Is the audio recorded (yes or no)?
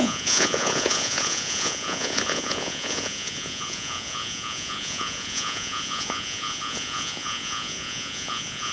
no